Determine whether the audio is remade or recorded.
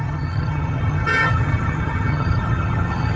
remade